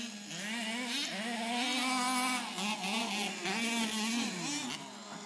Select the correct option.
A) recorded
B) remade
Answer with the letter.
A